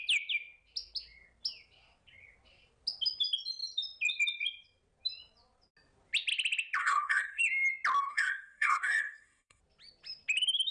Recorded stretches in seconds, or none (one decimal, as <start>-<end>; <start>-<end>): 0.0-6.8; 7.4-8.1; 9.6-10.7